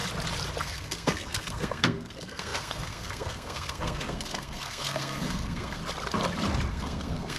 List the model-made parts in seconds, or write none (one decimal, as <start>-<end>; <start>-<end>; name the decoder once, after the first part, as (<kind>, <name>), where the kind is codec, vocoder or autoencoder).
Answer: 0.6-5.8 (codec, SNAC); 6.7-7.4